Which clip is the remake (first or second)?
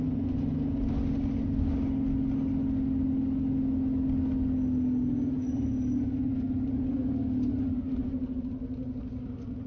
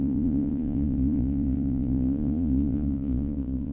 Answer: second